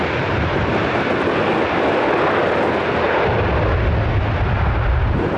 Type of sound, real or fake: real